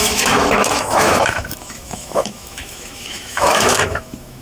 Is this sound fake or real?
fake